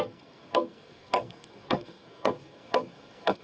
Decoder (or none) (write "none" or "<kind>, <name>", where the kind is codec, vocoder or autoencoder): codec, SNAC